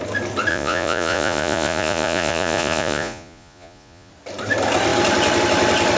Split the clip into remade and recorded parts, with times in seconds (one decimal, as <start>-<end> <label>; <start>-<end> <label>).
0.0-0.5 recorded; 0.5-4.1 remade; 4.1-6.0 recorded